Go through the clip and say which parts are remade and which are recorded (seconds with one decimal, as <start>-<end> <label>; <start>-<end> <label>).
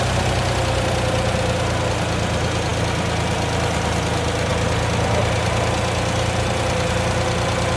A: 0.0-7.8 recorded